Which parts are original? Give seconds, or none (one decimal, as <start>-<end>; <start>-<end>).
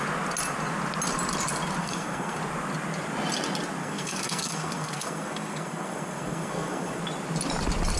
0.0-1.8; 2.4-3.8; 7.0-8.0